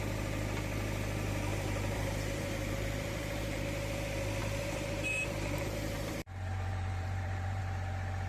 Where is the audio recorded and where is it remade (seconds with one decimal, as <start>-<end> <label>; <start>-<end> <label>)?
0.0-1.5 recorded; 1.5-3.6 remade; 3.6-4.4 recorded; 4.4-7.6 remade; 7.6-8.3 recorded